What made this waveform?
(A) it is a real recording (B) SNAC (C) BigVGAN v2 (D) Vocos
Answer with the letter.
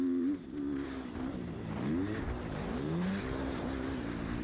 A